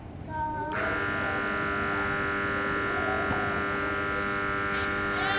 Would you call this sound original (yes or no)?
yes